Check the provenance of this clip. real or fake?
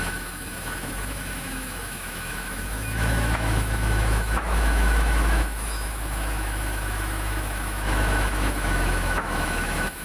fake